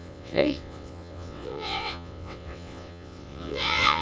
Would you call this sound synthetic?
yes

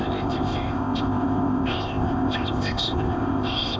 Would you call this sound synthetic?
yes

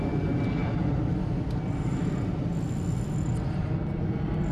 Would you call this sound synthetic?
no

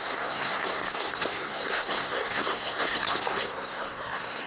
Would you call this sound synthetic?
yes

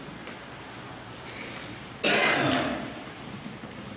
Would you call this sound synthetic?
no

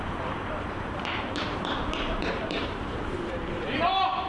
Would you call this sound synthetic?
yes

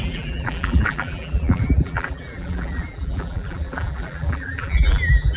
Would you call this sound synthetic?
yes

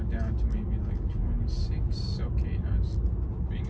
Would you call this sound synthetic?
no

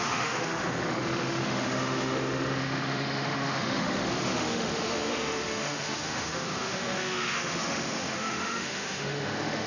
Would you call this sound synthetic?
yes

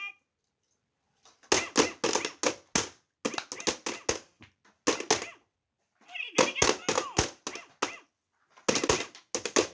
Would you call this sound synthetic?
no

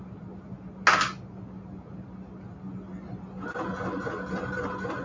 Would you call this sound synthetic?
no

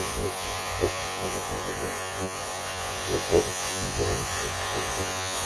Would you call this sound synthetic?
yes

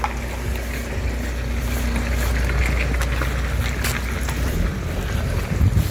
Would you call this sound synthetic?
no